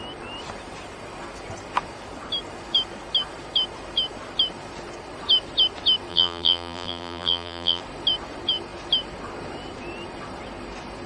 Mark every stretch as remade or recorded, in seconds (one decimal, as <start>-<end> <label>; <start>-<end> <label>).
0.0-6.1 recorded; 6.1-7.8 remade; 7.8-11.1 recorded